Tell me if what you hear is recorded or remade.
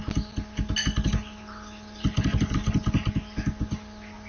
recorded